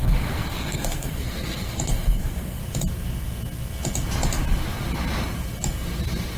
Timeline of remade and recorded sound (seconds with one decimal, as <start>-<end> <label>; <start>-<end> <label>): 0.0-2.6 remade; 2.6-6.4 recorded